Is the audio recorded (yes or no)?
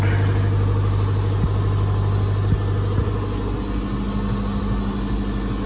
yes